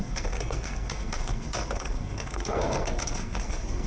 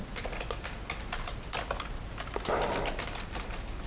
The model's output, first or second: first